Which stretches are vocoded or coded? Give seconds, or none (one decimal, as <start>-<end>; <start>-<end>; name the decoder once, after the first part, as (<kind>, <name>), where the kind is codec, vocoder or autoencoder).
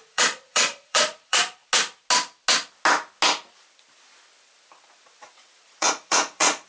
0.0-1.6 (vocoder, Vocos); 5.6-6.7